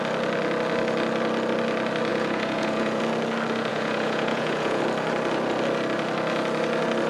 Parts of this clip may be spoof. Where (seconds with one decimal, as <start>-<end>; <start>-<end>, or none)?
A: 2.1-3.0; 3.7-4.8